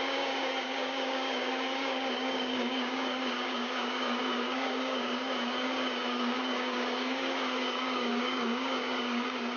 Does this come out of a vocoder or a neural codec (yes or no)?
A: yes